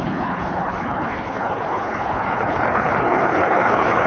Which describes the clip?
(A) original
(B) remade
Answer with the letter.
B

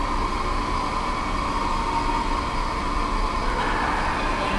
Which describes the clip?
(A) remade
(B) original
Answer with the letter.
B